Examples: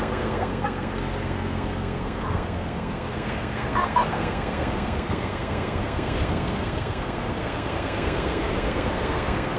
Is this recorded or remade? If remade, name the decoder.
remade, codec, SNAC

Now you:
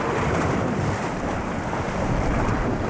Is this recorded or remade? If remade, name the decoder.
recorded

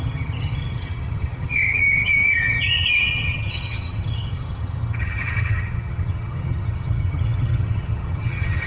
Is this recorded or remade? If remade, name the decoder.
remade, vocoder, HiFi-GAN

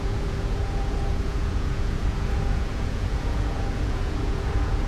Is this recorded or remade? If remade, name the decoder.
remade, vocoder, Vocos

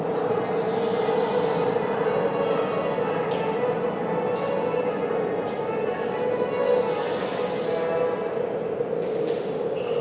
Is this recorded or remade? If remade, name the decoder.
recorded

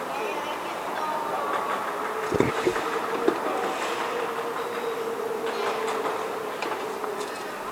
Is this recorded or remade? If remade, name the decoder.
recorded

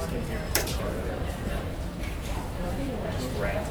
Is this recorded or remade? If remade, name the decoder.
remade, vocoder, BigVGAN v2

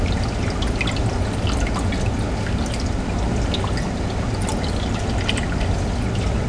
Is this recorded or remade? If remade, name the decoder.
recorded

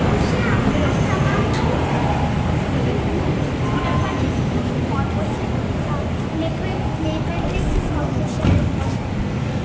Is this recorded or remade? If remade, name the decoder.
recorded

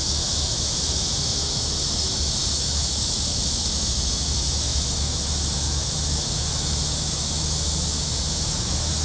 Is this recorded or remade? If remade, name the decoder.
remade, autoencoder, DAC-VAE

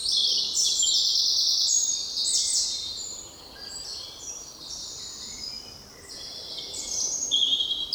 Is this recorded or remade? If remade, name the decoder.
remade, vocoder, BigVGAN v2